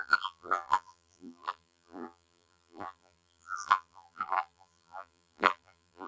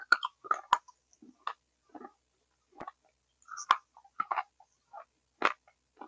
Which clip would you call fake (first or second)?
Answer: first